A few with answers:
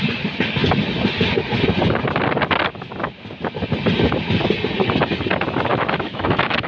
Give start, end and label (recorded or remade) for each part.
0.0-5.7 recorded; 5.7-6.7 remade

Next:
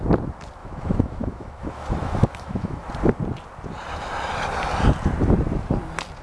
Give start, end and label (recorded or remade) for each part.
0.0-0.6 recorded; 0.6-2.9 remade; 2.9-6.2 recorded

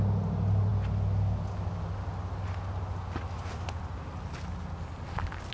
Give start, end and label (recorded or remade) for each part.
0.0-5.5 recorded